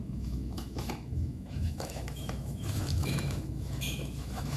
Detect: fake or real fake